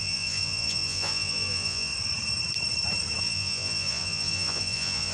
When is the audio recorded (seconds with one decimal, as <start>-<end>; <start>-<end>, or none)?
1.9-3.2